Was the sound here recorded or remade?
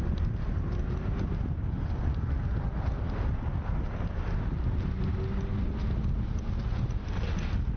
recorded